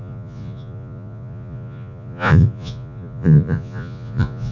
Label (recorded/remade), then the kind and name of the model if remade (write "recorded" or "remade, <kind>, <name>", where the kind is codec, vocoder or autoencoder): remade, vocoder, Vocos